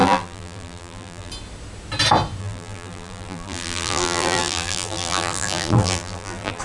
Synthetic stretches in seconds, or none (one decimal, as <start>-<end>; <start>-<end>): 0.0-1.3; 2.4-6.6